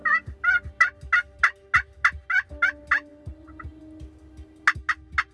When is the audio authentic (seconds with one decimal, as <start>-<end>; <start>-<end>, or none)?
0.0-3.1; 3.8-5.3